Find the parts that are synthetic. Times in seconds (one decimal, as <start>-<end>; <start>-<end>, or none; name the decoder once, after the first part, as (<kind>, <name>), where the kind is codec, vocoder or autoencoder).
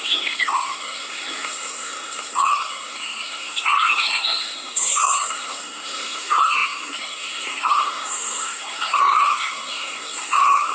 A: 0.0-10.7 (codec, SNAC)